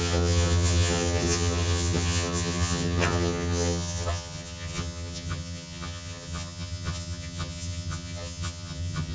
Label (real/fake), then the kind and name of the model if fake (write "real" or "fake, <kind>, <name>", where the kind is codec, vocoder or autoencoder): fake, vocoder, HiFi-GAN